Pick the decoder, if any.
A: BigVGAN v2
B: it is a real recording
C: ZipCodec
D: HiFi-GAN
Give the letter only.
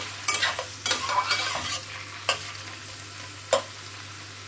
B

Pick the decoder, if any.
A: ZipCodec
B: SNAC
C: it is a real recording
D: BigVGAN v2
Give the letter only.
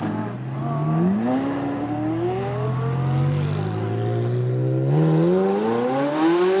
C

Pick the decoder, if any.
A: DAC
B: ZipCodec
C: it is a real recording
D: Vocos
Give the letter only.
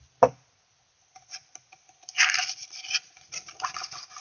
C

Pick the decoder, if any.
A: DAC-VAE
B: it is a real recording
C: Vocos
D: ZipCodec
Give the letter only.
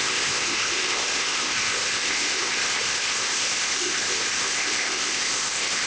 D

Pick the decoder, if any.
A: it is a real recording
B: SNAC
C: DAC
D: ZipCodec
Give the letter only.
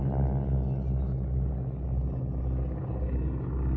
A